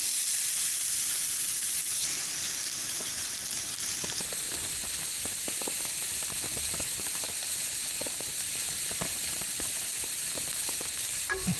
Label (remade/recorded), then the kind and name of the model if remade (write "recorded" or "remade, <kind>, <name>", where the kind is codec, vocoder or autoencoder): remade, vocoder, BigVGAN v2